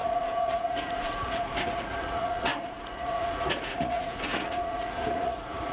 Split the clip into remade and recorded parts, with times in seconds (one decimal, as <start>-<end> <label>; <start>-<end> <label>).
0.0-5.7 remade